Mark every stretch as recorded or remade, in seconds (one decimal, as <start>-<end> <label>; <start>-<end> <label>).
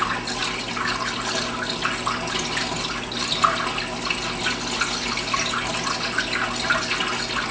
0.0-7.5 recorded